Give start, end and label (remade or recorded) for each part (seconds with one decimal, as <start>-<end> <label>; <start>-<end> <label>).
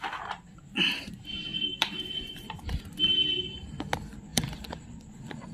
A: 0.0-1.5 recorded; 1.5-2.8 remade; 2.8-4.3 recorded; 4.3-5.5 remade